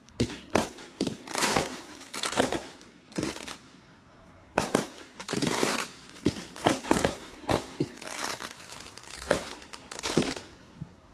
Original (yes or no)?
no